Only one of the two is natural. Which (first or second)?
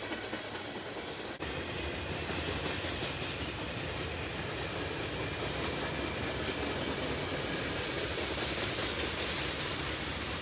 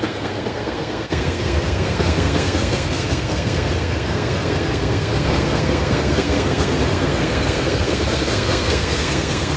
first